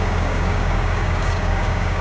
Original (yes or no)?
no